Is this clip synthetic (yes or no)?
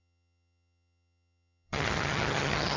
yes